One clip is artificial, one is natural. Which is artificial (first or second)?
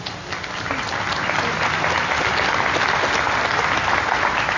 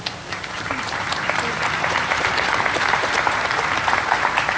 second